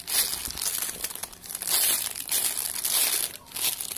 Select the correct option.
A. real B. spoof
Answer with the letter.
A